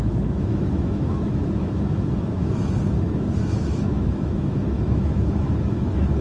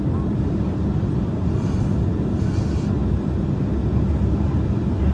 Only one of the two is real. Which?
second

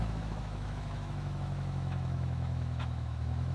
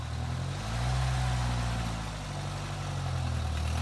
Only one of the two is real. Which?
second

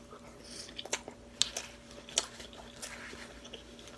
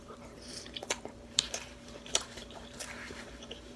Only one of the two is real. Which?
first